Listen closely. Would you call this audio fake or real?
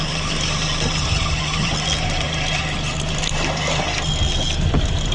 real